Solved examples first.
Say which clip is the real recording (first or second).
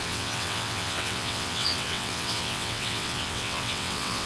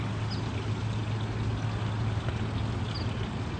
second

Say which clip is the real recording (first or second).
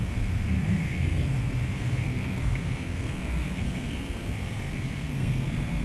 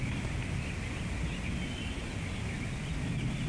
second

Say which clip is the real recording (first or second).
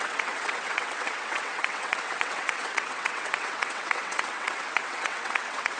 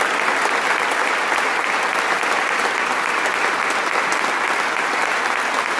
second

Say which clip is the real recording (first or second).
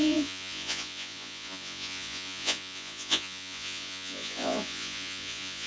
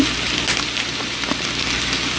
second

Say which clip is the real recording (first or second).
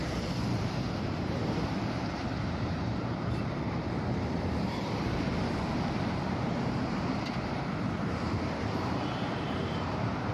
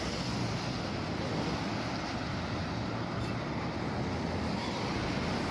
second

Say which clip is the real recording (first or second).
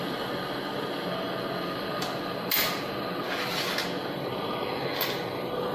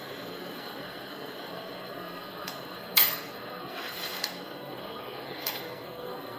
first